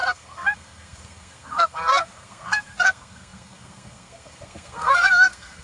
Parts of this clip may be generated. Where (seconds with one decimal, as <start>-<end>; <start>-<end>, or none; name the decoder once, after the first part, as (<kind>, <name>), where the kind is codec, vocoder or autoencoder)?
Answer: 0.0-5.6 (codec, SNAC)